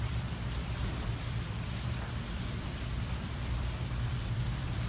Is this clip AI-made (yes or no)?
yes